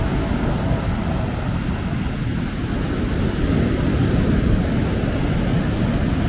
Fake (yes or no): no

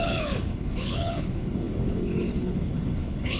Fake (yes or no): yes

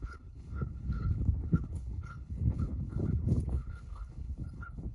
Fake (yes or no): yes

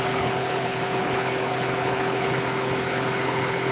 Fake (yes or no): yes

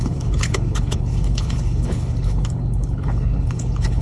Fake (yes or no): yes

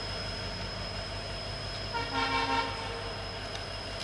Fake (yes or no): no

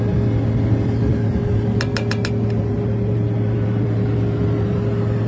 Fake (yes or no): no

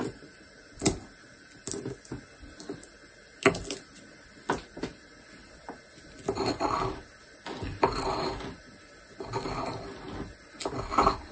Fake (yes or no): no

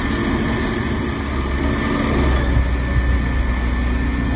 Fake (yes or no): no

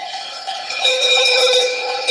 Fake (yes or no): yes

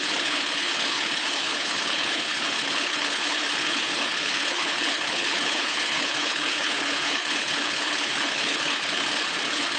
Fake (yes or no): yes